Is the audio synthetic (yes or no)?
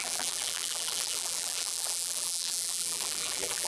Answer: yes